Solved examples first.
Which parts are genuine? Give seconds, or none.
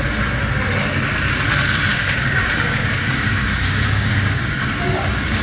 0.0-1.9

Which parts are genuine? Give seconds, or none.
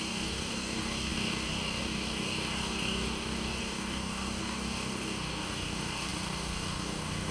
none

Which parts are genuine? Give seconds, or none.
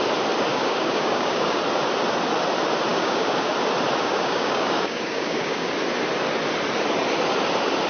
0.0-0.5; 1.6-2.9; 3.5-4.0; 5.7-7.9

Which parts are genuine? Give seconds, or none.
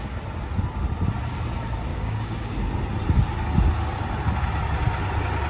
0.0-1.9; 2.5-5.5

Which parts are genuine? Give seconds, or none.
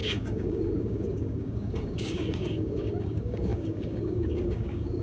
none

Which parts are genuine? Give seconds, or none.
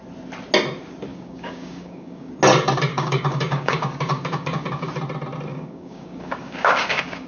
0.0-1.1; 2.3-2.9; 4.9-5.5